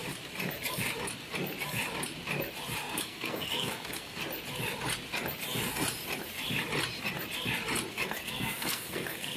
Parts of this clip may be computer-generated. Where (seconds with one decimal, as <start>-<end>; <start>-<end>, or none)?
2.8-4.2; 7.9-9.4